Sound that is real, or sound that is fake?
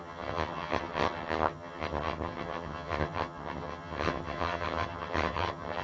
fake